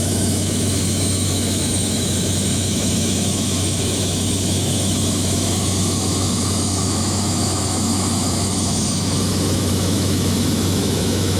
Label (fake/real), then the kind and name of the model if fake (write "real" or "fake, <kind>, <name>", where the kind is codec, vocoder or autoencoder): fake, autoencoder, DAC-VAE